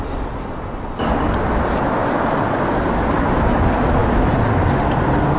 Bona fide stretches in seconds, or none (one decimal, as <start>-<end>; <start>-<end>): 0.0-2.0; 2.5-5.4